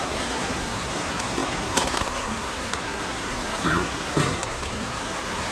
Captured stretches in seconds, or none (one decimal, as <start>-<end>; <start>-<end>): none

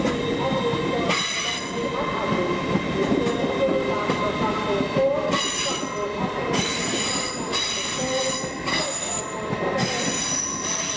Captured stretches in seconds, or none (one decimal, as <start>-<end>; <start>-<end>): 0.0-8.7; 9.2-11.0

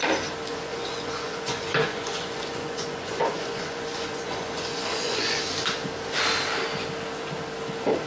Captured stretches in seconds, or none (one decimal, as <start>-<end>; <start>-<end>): 0.0-0.5; 5.4-8.1

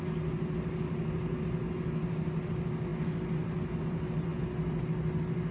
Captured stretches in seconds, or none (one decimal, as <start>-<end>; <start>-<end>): 0.0-5.5

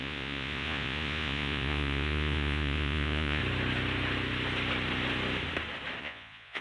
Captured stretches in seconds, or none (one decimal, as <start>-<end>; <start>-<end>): 3.4-6.0

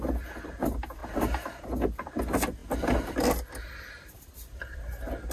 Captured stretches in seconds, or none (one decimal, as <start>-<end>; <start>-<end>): 0.0-5.3

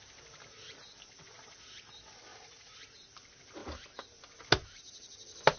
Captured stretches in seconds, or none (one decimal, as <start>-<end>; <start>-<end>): 0.0-2.3; 2.8-5.6